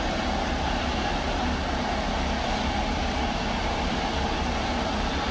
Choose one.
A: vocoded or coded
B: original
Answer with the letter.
B